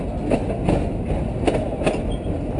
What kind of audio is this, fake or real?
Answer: real